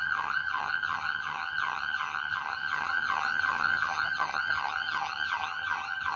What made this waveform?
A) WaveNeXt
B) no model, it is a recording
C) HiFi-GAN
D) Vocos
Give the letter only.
C